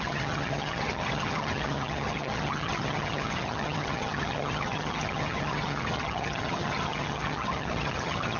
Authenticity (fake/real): fake